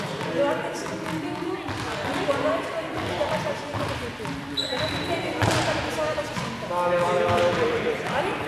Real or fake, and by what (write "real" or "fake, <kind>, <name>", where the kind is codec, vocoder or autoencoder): real